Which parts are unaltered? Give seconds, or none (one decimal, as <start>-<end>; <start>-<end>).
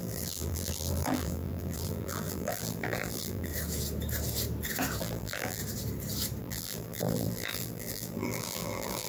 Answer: 3.5-5.0; 5.6-6.4